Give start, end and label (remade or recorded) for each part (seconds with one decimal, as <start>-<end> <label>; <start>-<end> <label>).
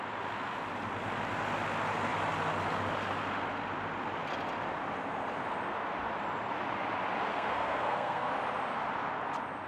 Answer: 0.0-7.3 recorded; 7.3-8.3 remade; 8.3-9.7 recorded